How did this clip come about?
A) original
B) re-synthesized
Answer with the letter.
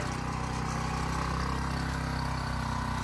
A